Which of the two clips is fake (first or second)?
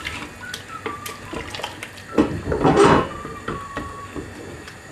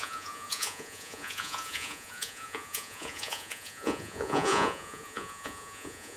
second